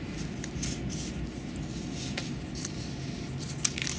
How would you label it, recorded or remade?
recorded